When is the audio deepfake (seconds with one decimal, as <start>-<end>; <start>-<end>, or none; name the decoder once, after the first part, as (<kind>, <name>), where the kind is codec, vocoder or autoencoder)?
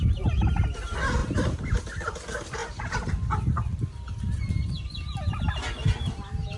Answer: 1.2-1.8 (vocoder, BigVGAN v2); 2.6-3.3